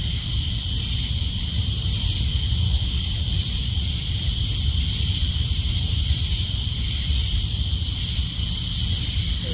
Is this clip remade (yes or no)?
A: yes